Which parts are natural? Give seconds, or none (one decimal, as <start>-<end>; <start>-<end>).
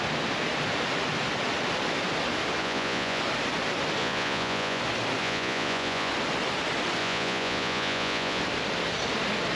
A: 0.0-2.6; 3.2-4.0; 4.8-5.2; 6.1-7.0; 8.4-9.6